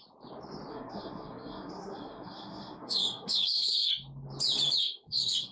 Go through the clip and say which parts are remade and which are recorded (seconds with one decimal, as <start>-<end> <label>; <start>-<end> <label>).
0.0-0.7 recorded; 0.7-3.9 remade; 3.9-4.8 recorded; 4.8-5.5 remade